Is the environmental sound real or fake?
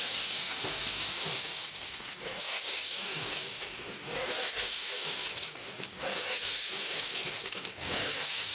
fake